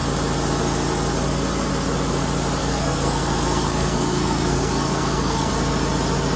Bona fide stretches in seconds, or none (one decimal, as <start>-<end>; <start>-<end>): 0.0-2.6; 5.5-6.4